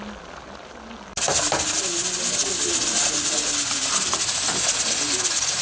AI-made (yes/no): no